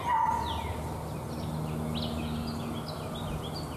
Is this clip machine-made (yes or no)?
no